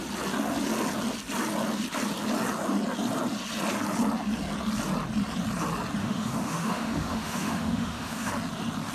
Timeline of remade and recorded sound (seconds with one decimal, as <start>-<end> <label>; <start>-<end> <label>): 0.0-6.0 recorded; 6.0-8.3 remade; 8.3-8.9 recorded